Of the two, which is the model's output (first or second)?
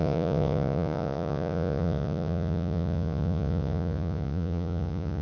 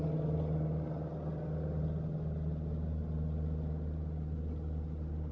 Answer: first